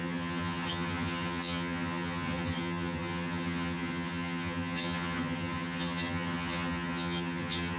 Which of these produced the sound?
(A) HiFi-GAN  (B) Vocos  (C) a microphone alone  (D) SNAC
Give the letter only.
A